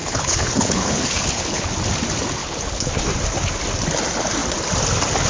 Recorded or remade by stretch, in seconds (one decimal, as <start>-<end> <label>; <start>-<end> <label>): 0.0-1.7 remade; 1.7-2.4 recorded; 2.4-2.9 remade; 2.9-5.3 recorded